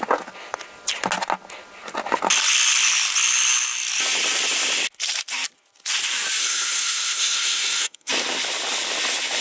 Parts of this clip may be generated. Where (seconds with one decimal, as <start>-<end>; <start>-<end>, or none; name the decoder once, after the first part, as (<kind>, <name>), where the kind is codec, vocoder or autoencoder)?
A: 6.4-8.1 (codec, SNAC)